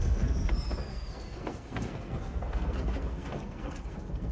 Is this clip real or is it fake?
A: fake